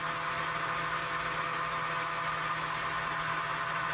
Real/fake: real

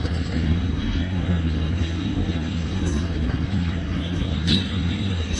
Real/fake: fake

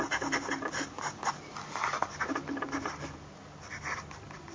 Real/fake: real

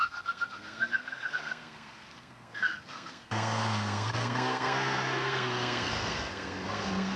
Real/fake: fake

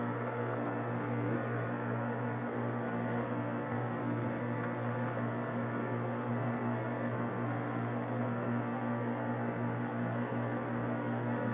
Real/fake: fake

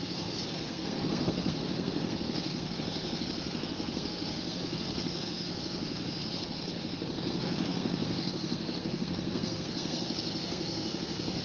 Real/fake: fake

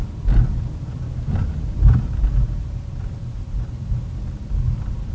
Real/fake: real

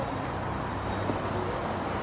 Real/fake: real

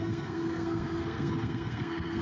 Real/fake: fake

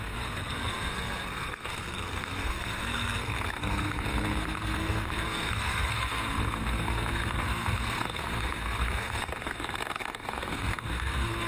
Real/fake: fake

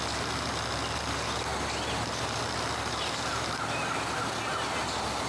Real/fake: real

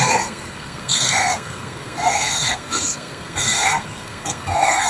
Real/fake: fake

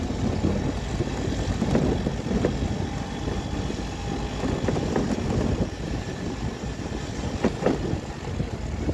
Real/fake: real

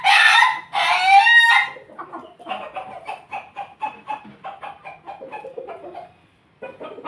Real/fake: real